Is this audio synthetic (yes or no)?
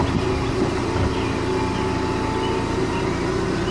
no